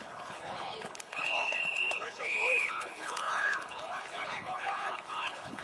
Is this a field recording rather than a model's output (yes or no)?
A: no